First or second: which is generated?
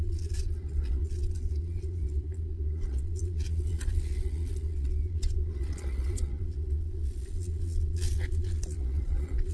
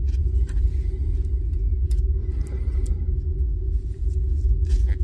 first